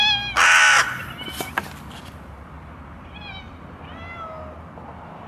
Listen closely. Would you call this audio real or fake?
real